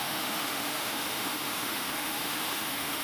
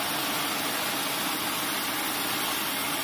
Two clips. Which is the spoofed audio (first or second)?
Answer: first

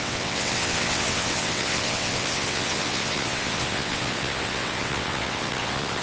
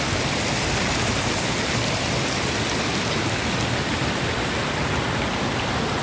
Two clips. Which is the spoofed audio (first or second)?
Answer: first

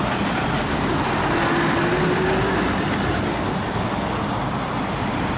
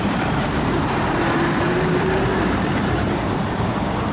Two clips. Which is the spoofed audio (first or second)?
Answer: second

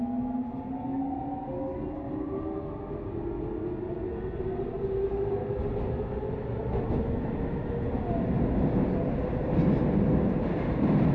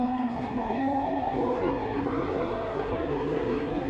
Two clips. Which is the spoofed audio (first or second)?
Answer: second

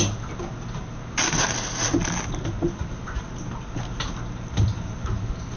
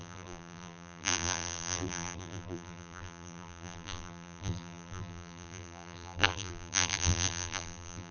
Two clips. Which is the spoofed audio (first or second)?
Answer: second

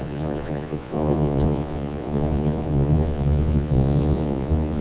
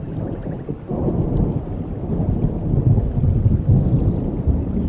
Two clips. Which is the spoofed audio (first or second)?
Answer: first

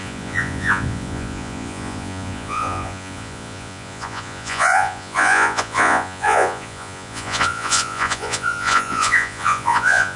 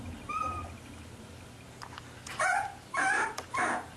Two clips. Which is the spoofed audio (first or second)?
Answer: first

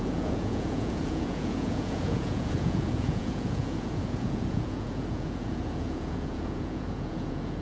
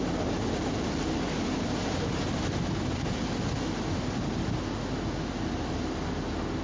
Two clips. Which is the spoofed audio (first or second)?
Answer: first